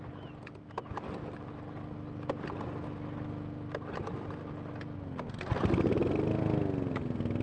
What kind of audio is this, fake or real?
real